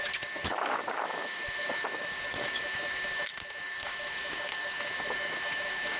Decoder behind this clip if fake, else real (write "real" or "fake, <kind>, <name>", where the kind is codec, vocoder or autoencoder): fake, autoencoder, DAC-VAE